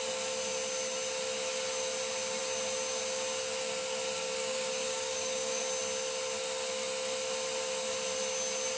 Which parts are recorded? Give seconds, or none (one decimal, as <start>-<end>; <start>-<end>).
0.0-4.2; 5.6-8.8